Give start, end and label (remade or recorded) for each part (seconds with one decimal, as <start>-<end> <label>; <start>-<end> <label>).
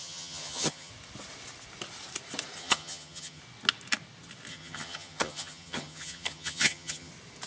0.0-0.9 remade; 0.9-2.6 recorded; 2.6-3.4 remade; 3.4-4.5 recorded; 4.5-7.1 remade; 7.1-7.5 recorded